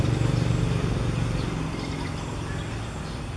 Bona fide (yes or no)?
yes